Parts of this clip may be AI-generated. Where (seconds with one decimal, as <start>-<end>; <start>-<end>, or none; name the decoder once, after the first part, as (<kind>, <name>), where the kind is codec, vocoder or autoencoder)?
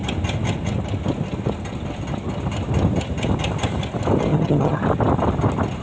4.3-4.8 (vocoder, HiFi-GAN)